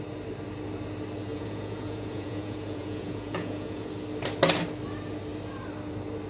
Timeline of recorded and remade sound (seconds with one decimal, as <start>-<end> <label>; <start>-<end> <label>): 0.0-1.3 recorded; 1.3-3.9 remade; 3.9-6.3 recorded